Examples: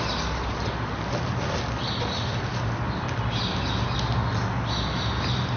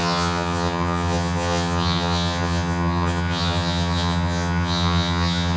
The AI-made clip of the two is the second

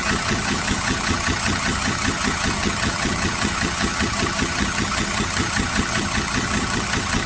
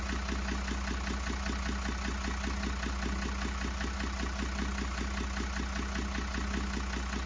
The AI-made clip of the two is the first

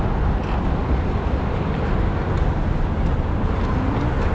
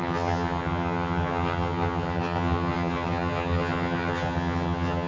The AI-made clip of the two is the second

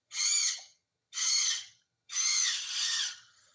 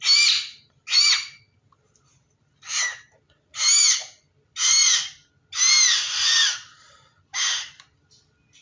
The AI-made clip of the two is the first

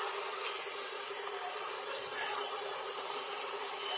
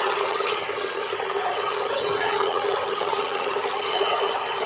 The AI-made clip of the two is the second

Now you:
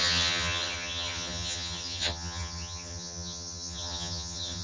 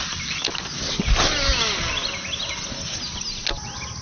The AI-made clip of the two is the first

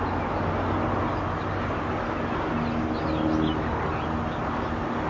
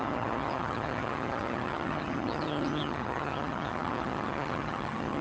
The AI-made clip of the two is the second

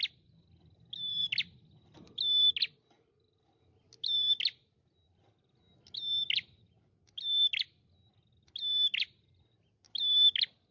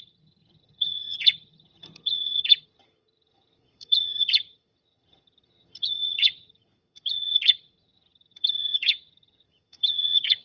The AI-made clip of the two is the second